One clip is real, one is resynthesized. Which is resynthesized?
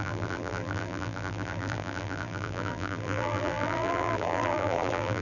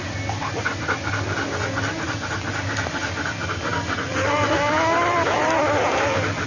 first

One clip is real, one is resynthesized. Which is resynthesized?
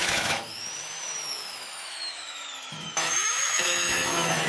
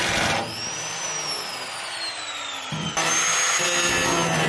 first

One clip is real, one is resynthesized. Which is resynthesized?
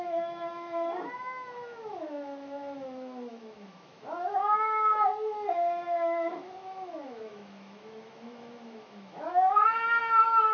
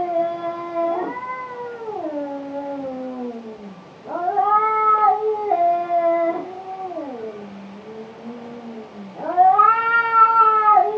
first